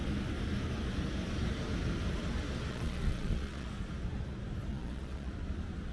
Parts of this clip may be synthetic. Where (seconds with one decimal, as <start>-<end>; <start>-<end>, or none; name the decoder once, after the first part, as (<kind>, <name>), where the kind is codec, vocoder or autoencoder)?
2.7-3.7 (vocoder, Vocos); 4.7-5.3